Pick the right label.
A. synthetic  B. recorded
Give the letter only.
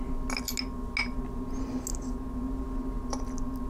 B